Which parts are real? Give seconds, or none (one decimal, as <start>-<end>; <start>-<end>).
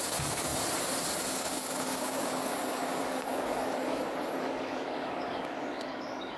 0.5-1.3